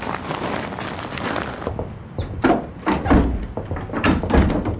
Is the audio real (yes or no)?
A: yes